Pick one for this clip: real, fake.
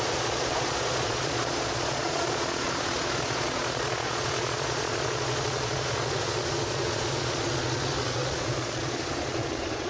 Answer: fake